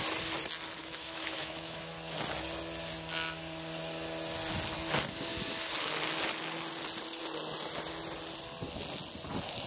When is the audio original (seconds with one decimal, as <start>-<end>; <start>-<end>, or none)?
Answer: 0.0-0.8; 1.9-9.7